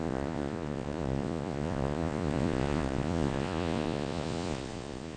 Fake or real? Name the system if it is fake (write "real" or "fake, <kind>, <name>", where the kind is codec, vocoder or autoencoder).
fake, vocoder, Vocos